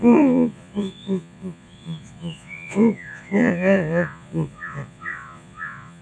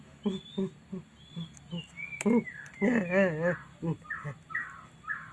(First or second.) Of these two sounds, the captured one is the second